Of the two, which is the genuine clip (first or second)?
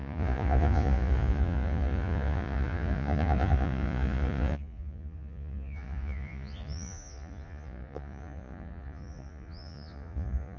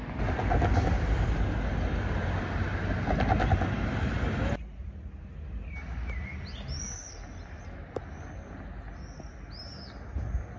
second